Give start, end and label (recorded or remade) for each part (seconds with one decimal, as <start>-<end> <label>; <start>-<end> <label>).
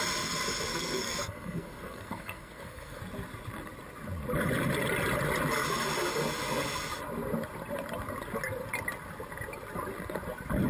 0.0-0.7 recorded; 0.7-3.0 remade; 3.0-10.7 recorded